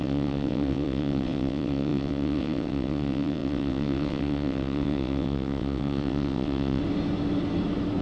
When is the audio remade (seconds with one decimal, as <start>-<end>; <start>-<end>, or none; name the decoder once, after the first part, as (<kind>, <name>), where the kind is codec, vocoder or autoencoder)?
0.0-6.8 (vocoder, WaveNeXt)